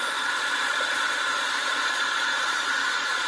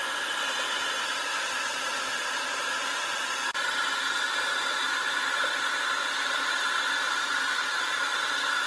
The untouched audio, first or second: second